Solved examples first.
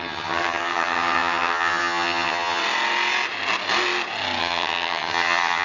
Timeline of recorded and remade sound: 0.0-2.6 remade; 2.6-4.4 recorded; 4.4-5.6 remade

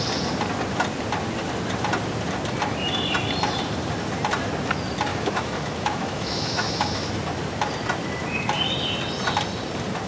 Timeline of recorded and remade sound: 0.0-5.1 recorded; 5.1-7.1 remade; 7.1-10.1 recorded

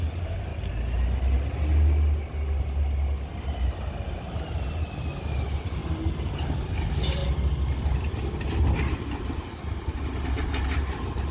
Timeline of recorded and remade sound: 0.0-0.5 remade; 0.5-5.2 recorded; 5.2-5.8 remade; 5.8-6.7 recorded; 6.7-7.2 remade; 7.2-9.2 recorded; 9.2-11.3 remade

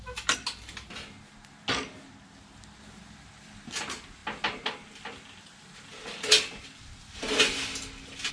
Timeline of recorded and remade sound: 0.0-8.3 recorded